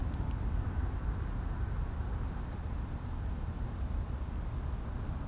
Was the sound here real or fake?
real